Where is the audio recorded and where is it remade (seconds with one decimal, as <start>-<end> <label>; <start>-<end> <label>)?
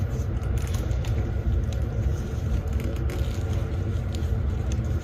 0.0-2.9 remade; 2.9-3.7 recorded; 3.7-5.0 remade